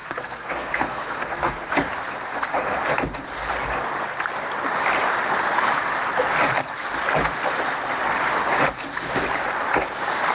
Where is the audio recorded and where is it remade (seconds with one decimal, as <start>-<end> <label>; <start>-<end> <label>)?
0.0-1.7 remade; 1.7-10.3 recorded

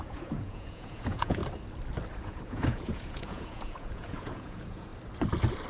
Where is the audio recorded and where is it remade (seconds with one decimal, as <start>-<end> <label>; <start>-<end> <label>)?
0.0-1.4 remade; 1.4-2.2 recorded; 2.2-4.9 remade; 4.9-5.7 recorded

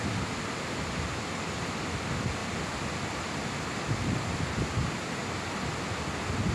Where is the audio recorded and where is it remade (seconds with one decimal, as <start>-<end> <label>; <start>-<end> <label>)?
0.0-6.5 recorded

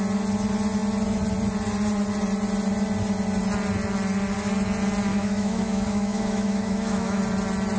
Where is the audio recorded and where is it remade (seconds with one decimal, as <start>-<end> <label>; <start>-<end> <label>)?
0.0-5.1 recorded; 5.1-7.2 remade; 7.2-7.8 recorded

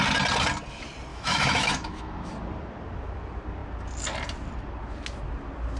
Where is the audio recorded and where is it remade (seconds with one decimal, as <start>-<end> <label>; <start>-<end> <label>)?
0.0-1.1 recorded; 1.1-2.3 remade; 2.3-5.8 recorded

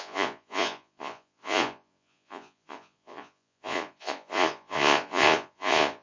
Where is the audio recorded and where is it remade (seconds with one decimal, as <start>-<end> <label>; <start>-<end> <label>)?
0.0-6.0 remade

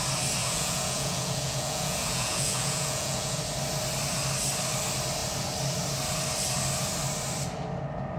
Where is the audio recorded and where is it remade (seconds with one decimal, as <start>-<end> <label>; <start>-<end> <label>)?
0.0-0.4 recorded; 0.4-3.4 remade; 3.4-8.2 recorded